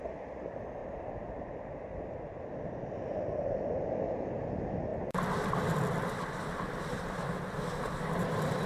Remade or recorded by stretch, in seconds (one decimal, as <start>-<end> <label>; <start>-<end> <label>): 0.0-0.8 recorded; 0.8-4.0 remade; 4.0-8.7 recorded